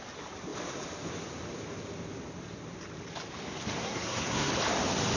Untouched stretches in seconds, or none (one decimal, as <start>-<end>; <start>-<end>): 0.0-3.8; 4.5-5.2